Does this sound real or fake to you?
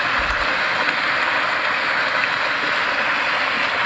real